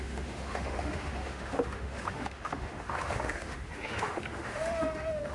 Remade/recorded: remade